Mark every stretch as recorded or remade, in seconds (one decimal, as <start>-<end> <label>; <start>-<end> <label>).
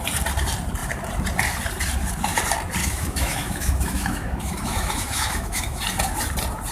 0.0-2.8 recorded; 2.8-5.8 remade; 5.8-6.7 recorded